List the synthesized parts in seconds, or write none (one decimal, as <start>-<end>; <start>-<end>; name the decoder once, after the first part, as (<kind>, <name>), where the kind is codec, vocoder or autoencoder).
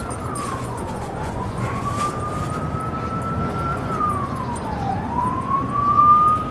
0.4-1.9 (vocoder, Vocos); 3.7-6.0